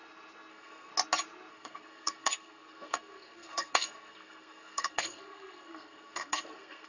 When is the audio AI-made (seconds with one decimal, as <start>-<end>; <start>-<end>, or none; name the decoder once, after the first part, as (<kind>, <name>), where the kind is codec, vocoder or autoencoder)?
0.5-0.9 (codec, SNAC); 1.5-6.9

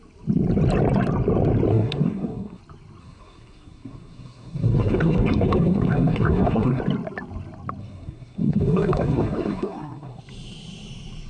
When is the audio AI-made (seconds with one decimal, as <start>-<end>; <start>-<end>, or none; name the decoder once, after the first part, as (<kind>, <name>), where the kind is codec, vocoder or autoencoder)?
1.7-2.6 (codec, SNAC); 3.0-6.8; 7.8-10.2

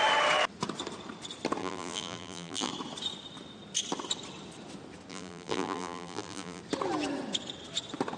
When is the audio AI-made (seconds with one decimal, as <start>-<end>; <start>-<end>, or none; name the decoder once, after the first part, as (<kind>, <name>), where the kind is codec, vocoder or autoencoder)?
1.6-2.7 (vocoder, BigVGAN v2); 5.1-6.6

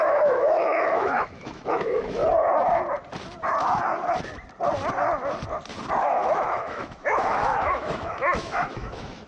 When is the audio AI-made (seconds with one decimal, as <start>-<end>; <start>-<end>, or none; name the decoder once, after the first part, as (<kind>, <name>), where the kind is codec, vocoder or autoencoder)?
0.0-2.2 (autoencoder, DAC-VAE); 6.0-9.3